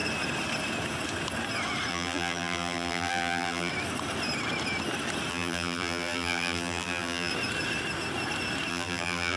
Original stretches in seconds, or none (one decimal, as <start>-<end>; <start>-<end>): 0.0-1.9; 3.7-5.3; 7.3-8.7